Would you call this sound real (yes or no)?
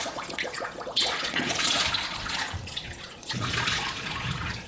no